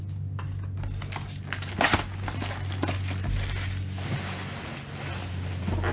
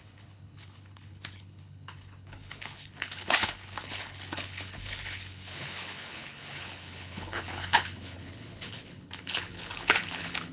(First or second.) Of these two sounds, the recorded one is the first